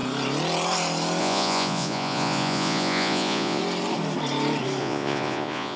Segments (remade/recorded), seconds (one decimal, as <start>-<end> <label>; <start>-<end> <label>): 0.0-1.2 recorded; 1.2-3.6 remade; 3.6-4.8 recorded; 4.8-5.8 remade